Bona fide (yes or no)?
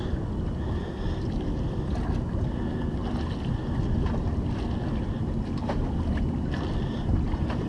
yes